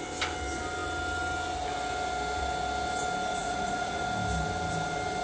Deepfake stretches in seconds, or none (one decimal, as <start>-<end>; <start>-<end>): 3.4-4.0